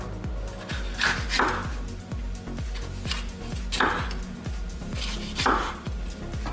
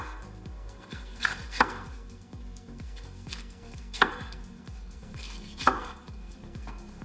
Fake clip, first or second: second